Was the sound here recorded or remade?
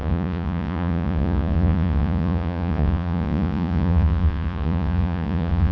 remade